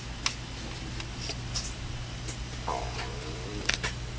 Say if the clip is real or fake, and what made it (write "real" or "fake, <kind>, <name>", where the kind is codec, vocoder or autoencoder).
real